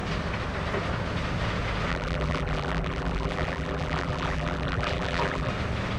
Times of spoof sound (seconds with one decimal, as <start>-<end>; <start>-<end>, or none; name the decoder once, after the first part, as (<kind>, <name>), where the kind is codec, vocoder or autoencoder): 1.9-5.5 (vocoder, BigVGAN v2)